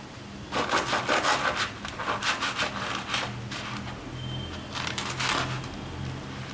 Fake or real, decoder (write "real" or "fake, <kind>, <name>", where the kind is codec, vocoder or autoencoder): real